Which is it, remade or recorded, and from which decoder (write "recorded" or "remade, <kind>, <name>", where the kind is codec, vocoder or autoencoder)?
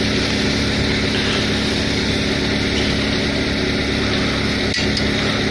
recorded